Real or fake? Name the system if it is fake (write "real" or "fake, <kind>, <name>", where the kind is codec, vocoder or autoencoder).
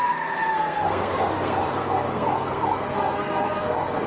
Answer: fake, codec, SNAC